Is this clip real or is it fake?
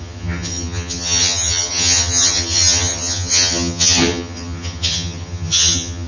fake